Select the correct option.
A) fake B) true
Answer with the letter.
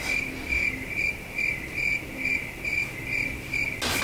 B